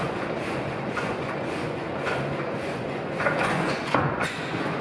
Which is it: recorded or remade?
remade